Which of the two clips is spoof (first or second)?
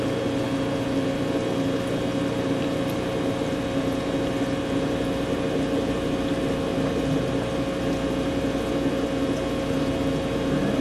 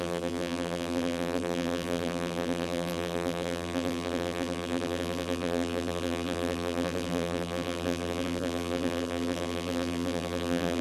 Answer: second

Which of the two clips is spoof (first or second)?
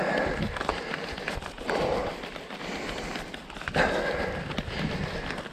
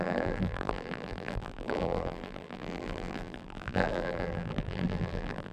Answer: second